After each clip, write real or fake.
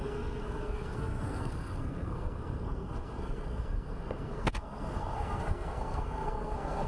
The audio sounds fake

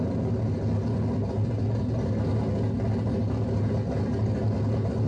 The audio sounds real